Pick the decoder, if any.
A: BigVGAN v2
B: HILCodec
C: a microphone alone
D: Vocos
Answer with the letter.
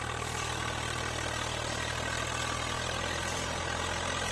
C